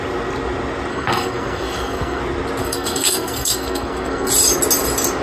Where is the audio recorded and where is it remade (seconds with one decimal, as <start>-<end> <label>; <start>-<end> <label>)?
0.0-0.9 recorded; 0.9-2.2 remade; 2.2-2.6 recorded; 2.6-4.3 remade; 4.3-5.2 recorded